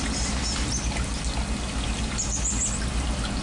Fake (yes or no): no